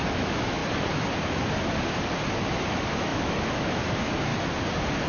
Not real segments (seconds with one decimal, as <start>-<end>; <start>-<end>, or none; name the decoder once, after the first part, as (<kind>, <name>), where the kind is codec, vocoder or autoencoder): 0.0-0.6 (autoencoder, DAC-VAE); 2.4-4.3